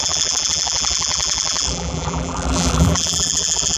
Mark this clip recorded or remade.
remade